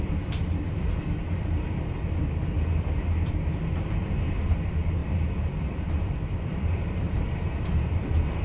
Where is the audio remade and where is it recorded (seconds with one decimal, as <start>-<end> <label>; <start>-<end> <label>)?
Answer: 0.0-5.0 recorded; 5.0-8.4 remade